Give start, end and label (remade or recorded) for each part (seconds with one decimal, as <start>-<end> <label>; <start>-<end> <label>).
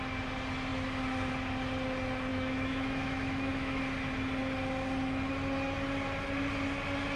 0.0-2.3 recorded; 2.3-3.8 remade; 3.8-7.2 recorded